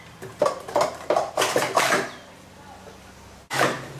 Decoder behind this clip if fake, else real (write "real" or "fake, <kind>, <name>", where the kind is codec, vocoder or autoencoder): real